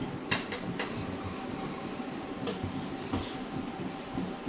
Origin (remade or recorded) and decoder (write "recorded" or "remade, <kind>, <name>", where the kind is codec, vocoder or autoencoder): remade, vocoder, BigVGAN v2